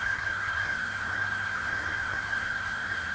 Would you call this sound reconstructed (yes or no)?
yes